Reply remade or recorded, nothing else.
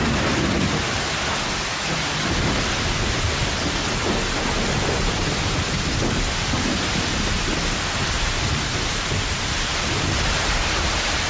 recorded